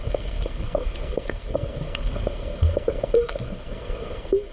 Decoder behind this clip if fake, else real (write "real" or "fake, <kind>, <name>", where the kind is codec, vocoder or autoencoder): fake, codec, SNAC